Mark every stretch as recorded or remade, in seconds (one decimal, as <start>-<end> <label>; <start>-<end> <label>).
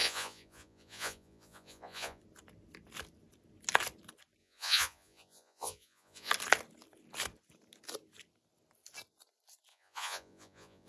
0.0-2.2 remade; 2.2-4.4 recorded; 4.4-6.3 remade; 6.3-9.7 recorded; 9.7-10.9 remade